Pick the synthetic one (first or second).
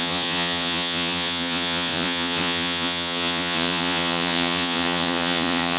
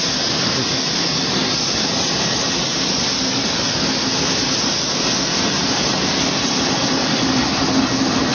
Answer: first